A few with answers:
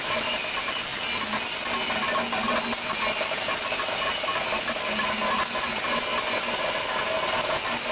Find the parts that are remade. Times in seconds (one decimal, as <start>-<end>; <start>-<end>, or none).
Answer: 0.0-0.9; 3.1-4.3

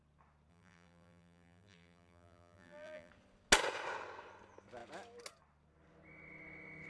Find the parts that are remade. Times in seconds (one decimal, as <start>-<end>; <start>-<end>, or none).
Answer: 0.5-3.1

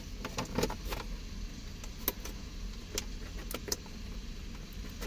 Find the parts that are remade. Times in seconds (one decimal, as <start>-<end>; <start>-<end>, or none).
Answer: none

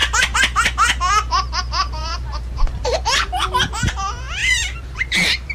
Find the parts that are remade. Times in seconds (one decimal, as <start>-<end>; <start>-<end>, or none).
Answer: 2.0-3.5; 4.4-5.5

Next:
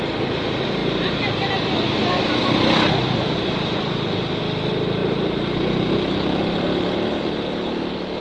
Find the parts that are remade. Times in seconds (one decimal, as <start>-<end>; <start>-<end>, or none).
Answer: none